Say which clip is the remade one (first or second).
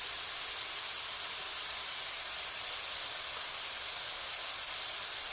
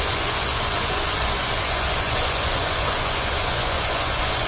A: second